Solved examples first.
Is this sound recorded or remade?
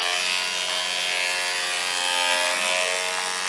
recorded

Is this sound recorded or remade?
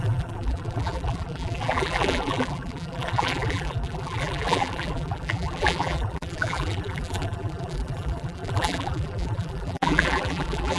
remade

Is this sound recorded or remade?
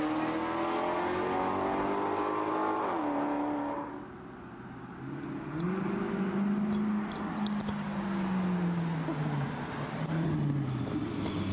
recorded